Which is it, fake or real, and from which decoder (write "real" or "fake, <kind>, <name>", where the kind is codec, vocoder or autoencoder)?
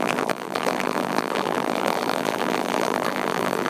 fake, vocoder, BigVGAN v2